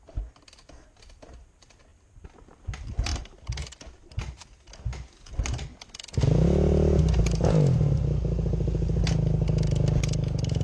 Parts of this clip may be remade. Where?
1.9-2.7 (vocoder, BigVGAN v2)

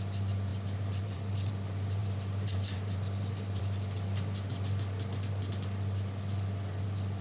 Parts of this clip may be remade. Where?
0.5-1.5 (vocoder, BigVGAN v2); 2.0-3.6

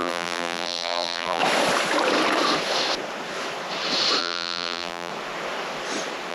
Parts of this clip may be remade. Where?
0.0-1.4 (vocoder, BigVGAN v2); 4.2-5.1

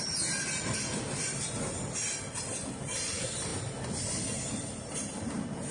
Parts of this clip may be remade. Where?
none